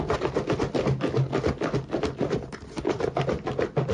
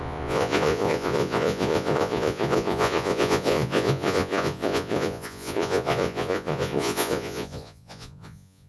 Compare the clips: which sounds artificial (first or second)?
second